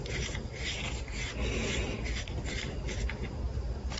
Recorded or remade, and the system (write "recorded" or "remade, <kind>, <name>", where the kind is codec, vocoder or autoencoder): remade, vocoder, BigVGAN v2